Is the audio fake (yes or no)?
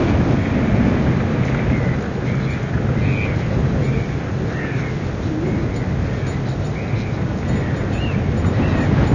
no